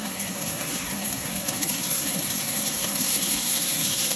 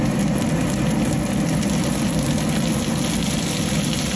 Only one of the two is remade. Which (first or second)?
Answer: first